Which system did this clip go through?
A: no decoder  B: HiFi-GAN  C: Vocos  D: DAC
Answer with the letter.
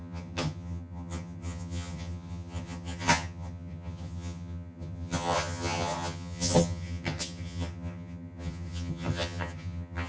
B